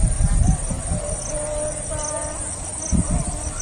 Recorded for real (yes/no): yes